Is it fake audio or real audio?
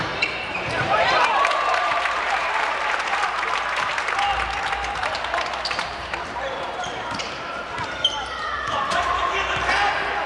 fake